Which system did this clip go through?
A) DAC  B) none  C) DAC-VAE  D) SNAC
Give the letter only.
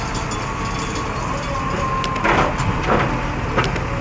B